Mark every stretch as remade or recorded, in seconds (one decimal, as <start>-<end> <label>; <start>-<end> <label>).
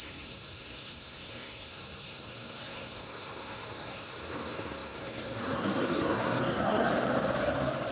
0.0-6.9 remade; 6.9-7.9 recorded